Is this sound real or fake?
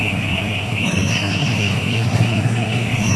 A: fake